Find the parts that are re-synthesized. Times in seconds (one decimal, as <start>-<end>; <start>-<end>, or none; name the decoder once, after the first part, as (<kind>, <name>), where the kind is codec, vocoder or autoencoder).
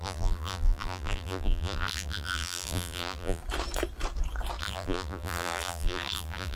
0.0-3.4 (vocoder, BigVGAN v2); 4.6-6.6